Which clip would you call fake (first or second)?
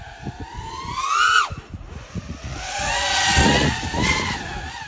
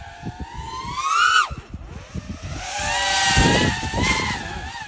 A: first